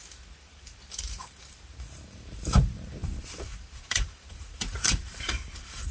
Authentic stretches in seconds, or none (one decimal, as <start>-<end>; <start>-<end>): none